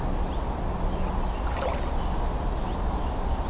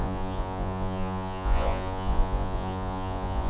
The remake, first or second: second